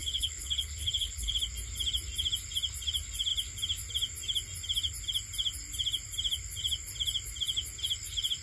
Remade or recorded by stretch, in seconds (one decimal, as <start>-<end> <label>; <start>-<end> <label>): 0.0-1.4 remade; 1.4-8.4 recorded